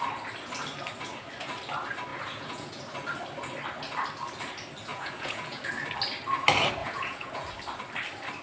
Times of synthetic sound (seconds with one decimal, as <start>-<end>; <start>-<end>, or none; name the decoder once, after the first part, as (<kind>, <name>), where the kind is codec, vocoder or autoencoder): 2.1-2.8 (vocoder, Vocos); 4.9-5.7; 6.8-7.5